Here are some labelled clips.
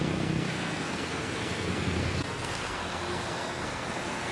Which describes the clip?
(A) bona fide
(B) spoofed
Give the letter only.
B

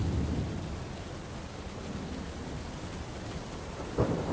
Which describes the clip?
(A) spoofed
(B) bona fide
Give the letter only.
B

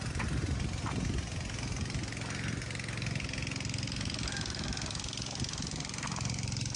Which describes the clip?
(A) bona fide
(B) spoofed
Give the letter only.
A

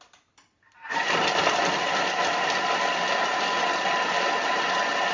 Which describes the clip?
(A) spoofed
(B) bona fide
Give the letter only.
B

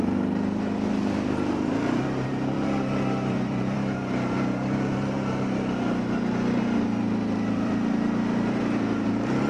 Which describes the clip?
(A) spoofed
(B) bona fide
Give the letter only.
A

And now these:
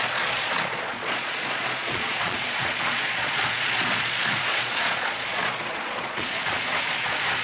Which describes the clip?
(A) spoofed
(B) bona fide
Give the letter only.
A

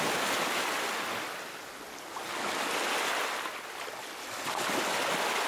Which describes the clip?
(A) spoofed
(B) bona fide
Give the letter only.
B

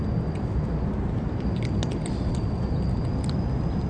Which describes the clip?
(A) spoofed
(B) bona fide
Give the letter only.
B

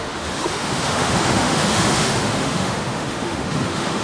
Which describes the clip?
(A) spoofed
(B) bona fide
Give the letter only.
A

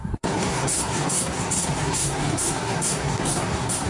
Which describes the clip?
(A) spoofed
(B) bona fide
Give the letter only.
A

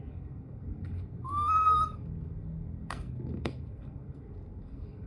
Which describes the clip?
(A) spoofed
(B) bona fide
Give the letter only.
A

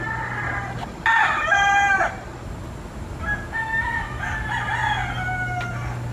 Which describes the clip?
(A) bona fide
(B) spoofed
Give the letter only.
A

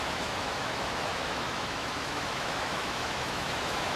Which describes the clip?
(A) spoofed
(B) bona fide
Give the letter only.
A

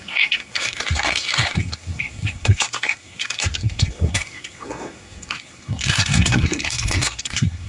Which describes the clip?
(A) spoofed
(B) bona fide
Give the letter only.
A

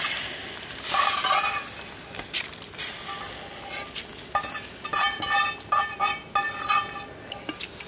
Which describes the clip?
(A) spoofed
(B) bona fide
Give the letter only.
B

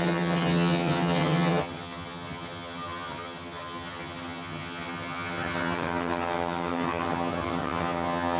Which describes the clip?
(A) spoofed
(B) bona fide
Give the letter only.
A